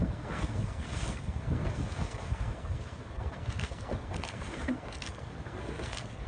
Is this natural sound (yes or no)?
no